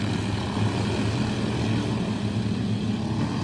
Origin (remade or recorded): recorded